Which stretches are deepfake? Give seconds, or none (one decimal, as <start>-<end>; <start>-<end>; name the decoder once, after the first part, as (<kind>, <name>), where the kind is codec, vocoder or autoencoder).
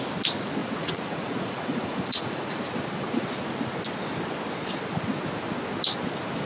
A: 0.6-2.6 (vocoder, Vocos)